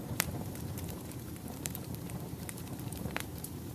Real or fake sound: fake